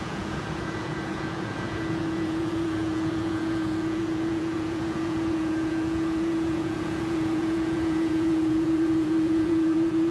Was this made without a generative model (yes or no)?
no